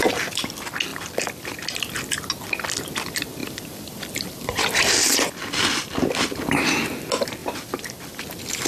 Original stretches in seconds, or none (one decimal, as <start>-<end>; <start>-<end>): 0.0-3.4; 5.9-7.4; 8.2-8.7